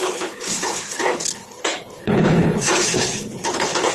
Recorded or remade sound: remade